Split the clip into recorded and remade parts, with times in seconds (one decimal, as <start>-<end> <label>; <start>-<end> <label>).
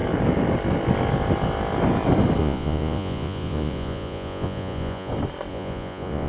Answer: 0.0-2.4 recorded; 2.4-5.1 remade; 5.1-5.5 recorded; 5.5-6.3 remade